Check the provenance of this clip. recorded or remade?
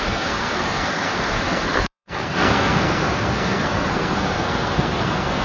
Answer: remade